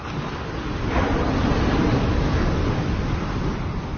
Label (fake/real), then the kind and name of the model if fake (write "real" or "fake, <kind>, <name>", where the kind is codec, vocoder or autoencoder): real